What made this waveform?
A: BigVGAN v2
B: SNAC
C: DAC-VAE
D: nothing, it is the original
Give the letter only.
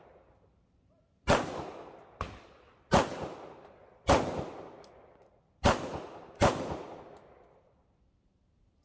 D